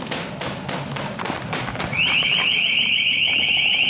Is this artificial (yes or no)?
no